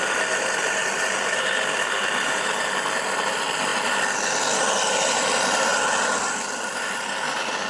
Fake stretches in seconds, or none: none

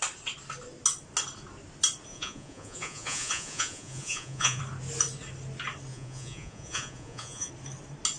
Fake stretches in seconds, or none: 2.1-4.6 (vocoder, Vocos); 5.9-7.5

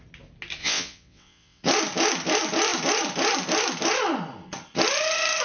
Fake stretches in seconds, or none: 0.6-1.6 (vocoder, WaveNeXt)

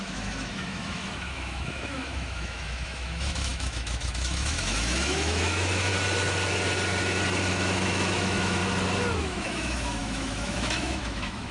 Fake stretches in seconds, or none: 0.0-5.9 (autoencoder, DAC-VAE); 7.5-8.6; 9.2-11.5